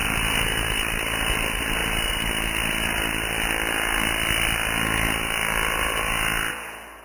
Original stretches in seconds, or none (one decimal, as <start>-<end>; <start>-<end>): 0.0-7.0